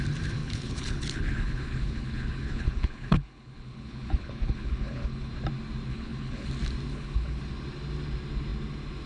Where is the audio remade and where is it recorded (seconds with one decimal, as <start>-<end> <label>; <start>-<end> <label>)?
0.0-0.4 recorded; 0.4-5.3 remade; 5.3-5.9 recorded; 5.9-6.5 remade; 6.5-6.9 recorded; 6.9-7.4 remade; 7.4-9.1 recorded